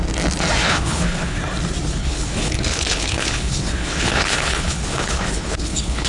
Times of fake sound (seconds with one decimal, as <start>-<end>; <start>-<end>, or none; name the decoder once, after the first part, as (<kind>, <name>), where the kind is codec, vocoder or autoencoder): 0.6-1.4 (codec, HILCodec); 2.0-6.1